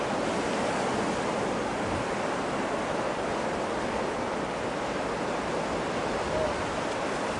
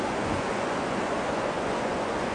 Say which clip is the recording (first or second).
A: first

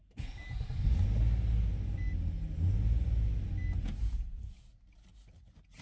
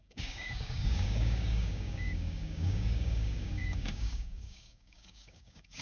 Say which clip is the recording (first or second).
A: first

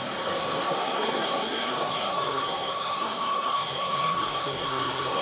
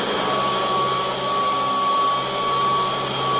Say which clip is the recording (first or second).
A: second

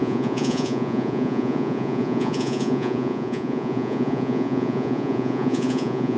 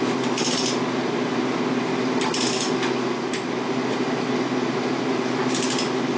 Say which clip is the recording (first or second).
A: second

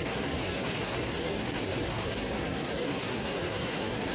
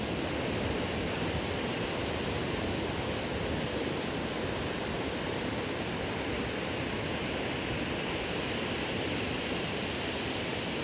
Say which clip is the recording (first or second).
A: second